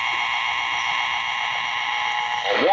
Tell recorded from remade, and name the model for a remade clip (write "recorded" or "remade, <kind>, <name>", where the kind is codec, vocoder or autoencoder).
recorded